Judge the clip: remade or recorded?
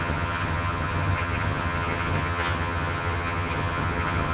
remade